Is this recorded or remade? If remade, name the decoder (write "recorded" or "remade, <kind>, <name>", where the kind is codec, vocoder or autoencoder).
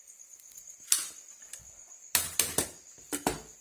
recorded